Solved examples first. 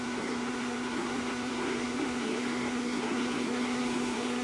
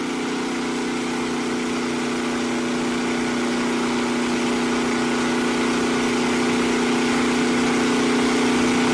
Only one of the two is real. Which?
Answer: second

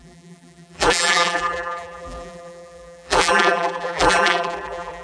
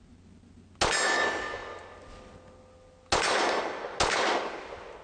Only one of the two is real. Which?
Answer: second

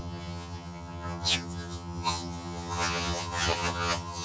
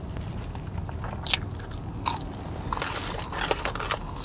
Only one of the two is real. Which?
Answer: second